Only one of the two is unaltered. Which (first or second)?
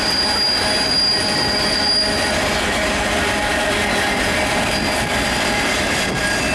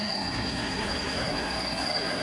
first